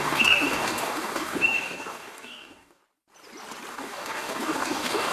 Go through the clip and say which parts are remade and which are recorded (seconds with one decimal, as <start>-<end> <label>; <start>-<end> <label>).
0.0-2.8 remade; 2.8-3.7 recorded; 3.7-5.1 remade